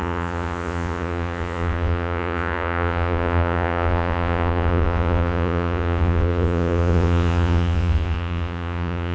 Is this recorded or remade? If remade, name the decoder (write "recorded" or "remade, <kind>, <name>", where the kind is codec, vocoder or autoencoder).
remade, vocoder, Vocos